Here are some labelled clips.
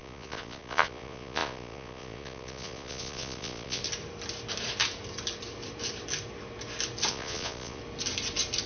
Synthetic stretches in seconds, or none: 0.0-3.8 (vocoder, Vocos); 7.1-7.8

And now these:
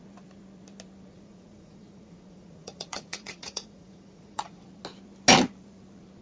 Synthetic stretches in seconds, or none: 1.1-4.6 (vocoder, Vocos)

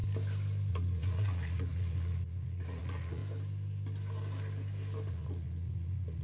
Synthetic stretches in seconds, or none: 0.7-3.2 (vocoder, Vocos); 5.1-6.2

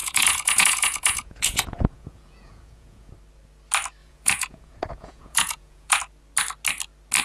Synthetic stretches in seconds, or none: 0.0-3.1 (vocoder, Vocos); 4.0-6.0

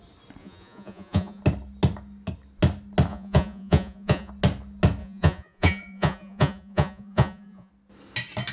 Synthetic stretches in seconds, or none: 0.4-1.4 (vocoder, Vocos); 3.1-4.3; 5.0-7.7

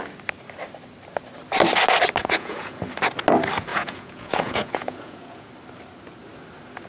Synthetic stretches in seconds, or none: 2.2-2.8 (vocoder, Vocos); 3.7-5.5